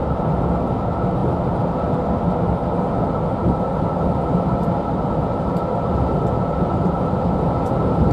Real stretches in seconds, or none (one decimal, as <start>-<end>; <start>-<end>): 0.0-8.1